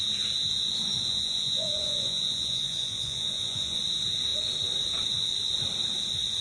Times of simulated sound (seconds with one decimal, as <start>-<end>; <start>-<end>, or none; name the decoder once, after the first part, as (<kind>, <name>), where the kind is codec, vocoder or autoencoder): 1.1-3.8 (vocoder, Vocos)